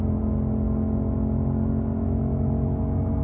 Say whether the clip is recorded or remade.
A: recorded